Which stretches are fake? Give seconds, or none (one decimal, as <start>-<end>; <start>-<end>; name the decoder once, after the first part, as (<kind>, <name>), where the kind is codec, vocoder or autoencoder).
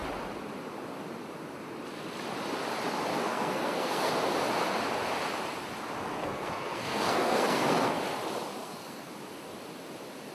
3.1-4.1 (codec, SNAC); 6.1-8.0; 8.6-9.1